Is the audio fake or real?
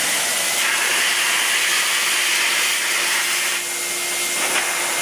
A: real